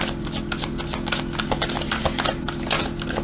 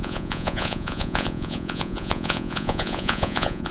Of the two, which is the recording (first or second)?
first